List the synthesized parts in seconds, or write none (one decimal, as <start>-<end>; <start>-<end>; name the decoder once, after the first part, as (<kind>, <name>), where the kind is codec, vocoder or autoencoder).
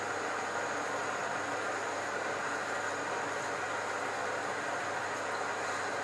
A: none